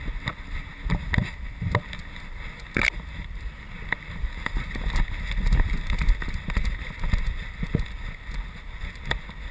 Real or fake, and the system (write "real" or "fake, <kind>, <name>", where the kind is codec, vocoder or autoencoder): real